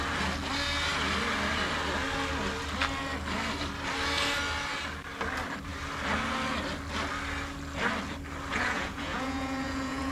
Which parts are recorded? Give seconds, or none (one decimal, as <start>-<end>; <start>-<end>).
0.0-8.5